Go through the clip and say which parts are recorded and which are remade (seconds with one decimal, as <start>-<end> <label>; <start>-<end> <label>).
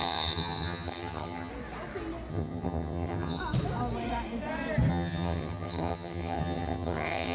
0.0-1.5 remade; 1.5-2.3 recorded; 2.3-3.4 remade; 3.4-4.9 recorded; 4.9-7.3 remade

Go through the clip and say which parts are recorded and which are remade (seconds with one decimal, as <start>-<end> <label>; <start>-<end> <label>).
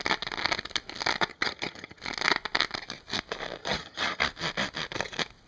0.0-1.3 recorded; 1.3-2.0 remade; 2.0-3.6 recorded; 3.6-4.2 remade; 4.2-5.5 recorded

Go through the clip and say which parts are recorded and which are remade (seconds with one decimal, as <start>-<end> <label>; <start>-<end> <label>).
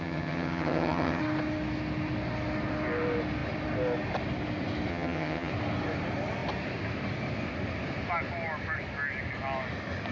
0.0-1.2 remade; 1.2-4.9 recorded; 4.9-5.5 remade; 5.5-10.1 recorded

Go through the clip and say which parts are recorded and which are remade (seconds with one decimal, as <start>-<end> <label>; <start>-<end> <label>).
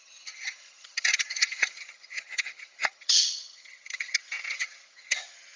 0.0-5.6 remade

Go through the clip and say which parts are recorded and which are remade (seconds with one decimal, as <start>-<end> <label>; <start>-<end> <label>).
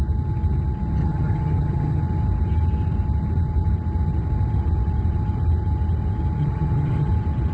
0.0-1.0 recorded; 1.0-2.0 remade; 2.0-6.4 recorded; 6.4-7.1 remade; 7.1-7.5 recorded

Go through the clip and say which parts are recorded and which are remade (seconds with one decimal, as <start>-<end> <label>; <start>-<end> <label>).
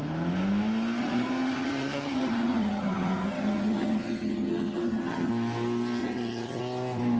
0.0-1.0 recorded; 1.0-5.3 remade; 5.3-6.0 recorded; 6.0-6.6 remade; 6.6-7.2 recorded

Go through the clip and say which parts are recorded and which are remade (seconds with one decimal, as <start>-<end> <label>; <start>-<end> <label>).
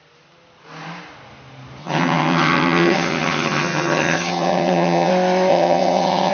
0.0-1.8 recorded; 1.8-5.1 remade; 5.1-5.5 recorded; 5.5-6.3 remade